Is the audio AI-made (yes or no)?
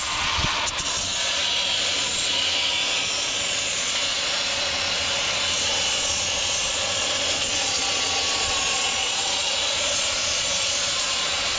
yes